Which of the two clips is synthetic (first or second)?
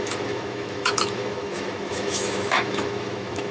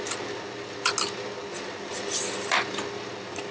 first